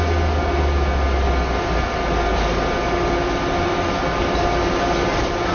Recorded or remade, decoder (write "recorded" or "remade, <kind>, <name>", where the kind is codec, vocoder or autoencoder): recorded